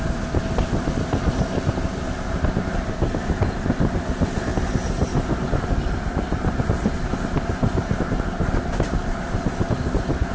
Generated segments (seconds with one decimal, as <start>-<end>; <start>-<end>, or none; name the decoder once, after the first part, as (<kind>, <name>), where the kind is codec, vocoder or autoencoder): none